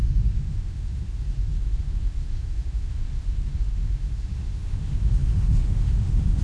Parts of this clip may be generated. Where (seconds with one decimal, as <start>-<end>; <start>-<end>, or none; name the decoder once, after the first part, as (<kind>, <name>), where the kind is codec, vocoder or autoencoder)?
0.0-6.4 (autoencoder, DAC-VAE)